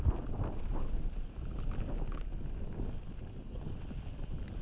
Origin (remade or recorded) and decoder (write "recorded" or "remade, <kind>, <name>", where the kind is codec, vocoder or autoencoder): recorded